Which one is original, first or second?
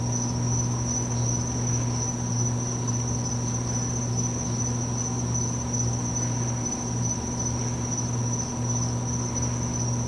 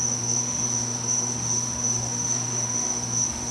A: first